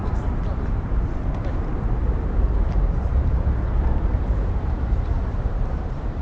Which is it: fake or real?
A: fake